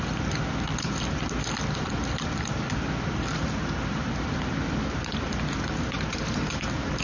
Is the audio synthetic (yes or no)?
no